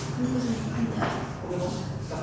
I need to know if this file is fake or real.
real